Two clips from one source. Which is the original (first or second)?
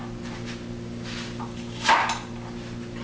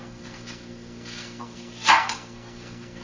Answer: first